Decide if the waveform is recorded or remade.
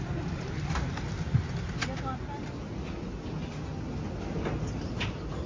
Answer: recorded